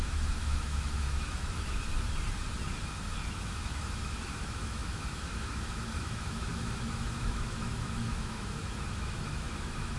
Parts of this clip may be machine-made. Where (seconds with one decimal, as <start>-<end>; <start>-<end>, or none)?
0.0-1.9; 3.3-10.0